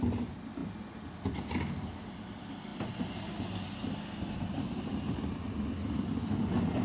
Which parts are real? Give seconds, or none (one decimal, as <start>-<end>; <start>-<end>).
0.0-6.8

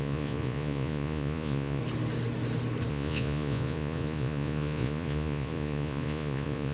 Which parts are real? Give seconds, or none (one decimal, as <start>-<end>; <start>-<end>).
1.8-2.9

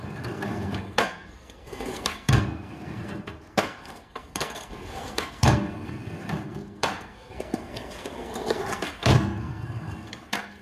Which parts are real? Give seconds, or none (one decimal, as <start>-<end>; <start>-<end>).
none

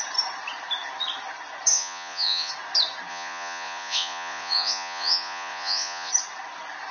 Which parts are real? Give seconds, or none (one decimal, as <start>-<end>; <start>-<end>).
0.0-1.7; 2.5-3.1; 6.1-6.9

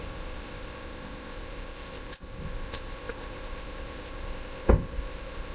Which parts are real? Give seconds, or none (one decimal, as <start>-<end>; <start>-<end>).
none

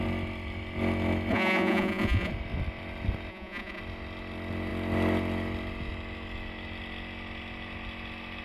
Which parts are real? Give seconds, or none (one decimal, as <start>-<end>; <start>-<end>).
0.0-1.3; 2.3-3.3; 3.8-8.4

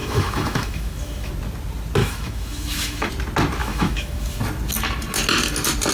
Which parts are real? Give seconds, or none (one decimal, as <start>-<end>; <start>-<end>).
1.3-2.0; 3.1-3.6; 4.4-5.9